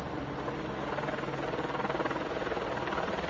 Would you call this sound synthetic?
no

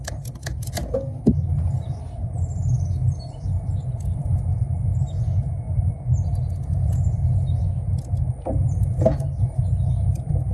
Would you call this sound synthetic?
no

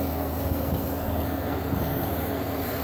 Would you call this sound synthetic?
yes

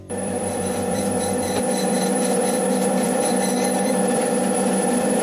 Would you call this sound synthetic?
yes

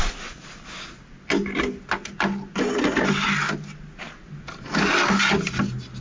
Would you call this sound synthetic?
no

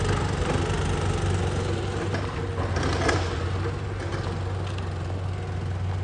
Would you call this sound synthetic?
no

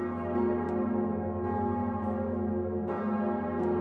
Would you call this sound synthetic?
no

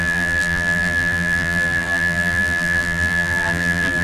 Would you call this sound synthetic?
yes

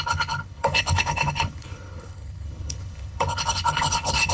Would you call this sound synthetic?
yes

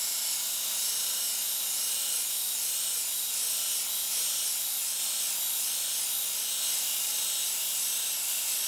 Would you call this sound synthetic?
no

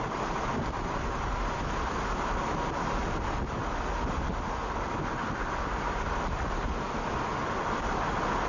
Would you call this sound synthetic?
no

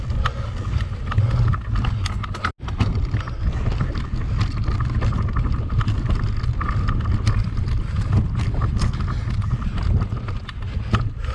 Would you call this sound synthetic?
no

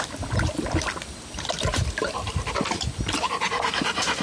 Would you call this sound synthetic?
no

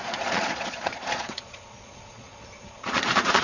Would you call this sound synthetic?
yes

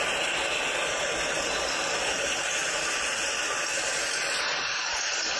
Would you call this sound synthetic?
no